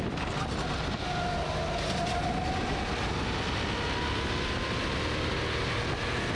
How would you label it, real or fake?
real